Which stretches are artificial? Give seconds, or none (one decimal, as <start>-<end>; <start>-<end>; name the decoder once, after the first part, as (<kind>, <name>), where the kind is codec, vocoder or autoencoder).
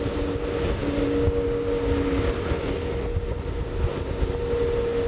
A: none